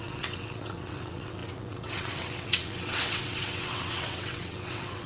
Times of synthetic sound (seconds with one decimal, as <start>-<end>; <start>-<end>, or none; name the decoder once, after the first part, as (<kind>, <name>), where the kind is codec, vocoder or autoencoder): 0.0-5.1 (vocoder, WaveNeXt)